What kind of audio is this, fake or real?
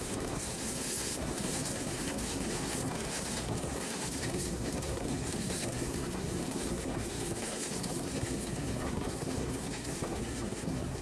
fake